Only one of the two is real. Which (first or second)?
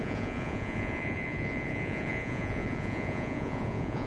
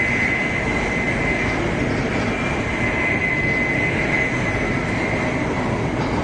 second